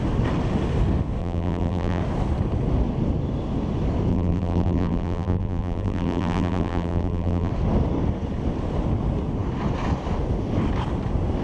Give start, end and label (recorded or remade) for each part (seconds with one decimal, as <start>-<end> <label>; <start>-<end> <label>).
0.0-1.2 recorded; 1.2-2.0 remade; 2.0-4.1 recorded; 4.1-7.5 remade; 7.5-11.4 recorded